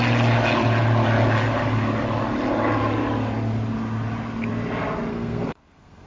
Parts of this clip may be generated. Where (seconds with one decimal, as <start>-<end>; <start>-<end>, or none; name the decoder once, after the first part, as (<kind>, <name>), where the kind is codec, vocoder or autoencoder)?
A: 5.1-6.1 (codec, SNAC)